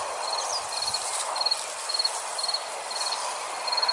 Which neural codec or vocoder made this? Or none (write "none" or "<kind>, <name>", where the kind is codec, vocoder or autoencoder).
none